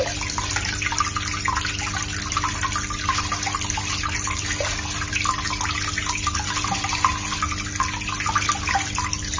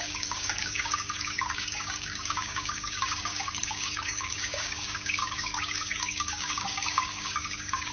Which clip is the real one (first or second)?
first